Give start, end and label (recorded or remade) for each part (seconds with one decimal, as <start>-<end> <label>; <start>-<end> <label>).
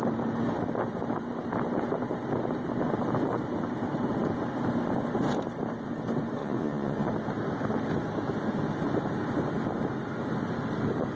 0.0-6.4 recorded; 6.4-7.1 remade; 7.1-11.2 recorded